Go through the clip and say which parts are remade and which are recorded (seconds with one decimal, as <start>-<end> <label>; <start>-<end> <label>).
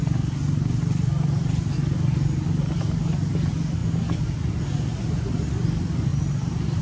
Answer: 0.0-6.8 recorded